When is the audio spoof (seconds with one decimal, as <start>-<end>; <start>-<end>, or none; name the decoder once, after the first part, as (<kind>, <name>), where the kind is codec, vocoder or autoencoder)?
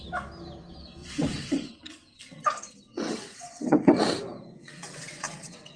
1.0-1.7 (vocoder, WaveNeXt); 2.9-4.0; 4.5-5.8